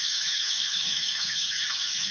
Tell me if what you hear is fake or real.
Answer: fake